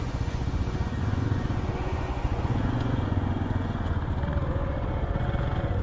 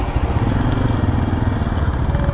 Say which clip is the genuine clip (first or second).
second